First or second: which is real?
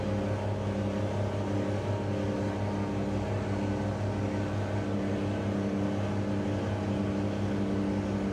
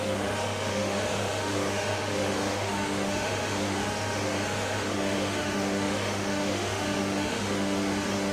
first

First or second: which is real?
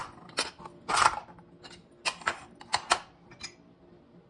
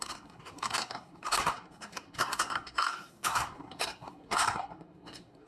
first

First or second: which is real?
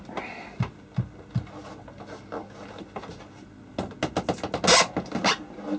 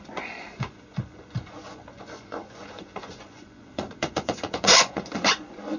first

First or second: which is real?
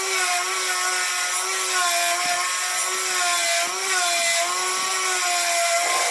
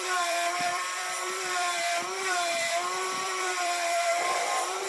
first